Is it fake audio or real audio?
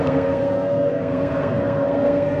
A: fake